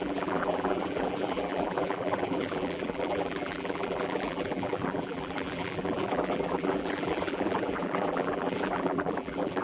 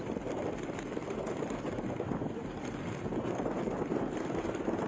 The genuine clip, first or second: second